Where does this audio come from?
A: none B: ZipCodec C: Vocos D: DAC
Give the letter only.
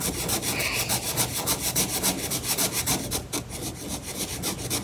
A